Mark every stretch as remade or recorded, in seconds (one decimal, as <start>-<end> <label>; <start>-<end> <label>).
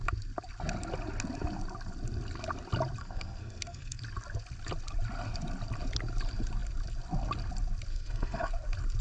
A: 0.0-3.0 recorded; 3.0-4.0 remade; 4.0-7.9 recorded; 7.9-8.5 remade; 8.5-9.0 recorded